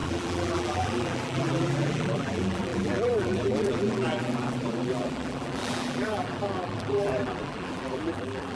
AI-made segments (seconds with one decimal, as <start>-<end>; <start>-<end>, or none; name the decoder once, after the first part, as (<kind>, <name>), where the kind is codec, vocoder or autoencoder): 0.0-8.5 (vocoder, BigVGAN v2)